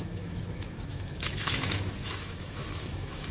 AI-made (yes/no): yes